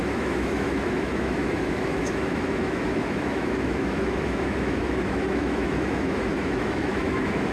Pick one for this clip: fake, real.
fake